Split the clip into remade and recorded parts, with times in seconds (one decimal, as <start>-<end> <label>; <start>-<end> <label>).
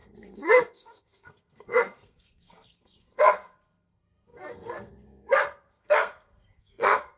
0.0-7.2 remade